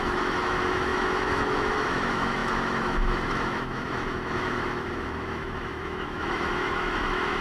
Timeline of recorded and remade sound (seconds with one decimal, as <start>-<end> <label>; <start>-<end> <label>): 0.0-7.4 remade